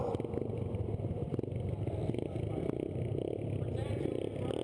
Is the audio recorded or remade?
remade